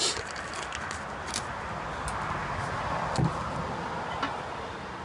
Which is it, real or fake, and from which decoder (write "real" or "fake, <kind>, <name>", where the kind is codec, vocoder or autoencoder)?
real